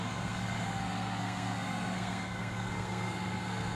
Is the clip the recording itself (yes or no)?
no